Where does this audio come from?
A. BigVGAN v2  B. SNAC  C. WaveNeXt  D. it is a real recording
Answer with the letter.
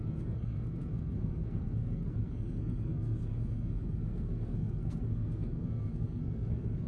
B